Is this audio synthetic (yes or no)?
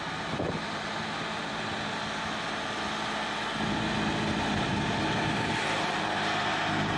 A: no